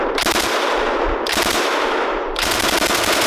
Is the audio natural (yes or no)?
yes